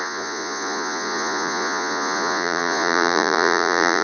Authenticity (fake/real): fake